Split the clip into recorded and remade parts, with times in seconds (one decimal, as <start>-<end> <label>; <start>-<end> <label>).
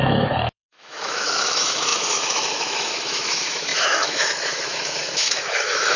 0.0-6.0 remade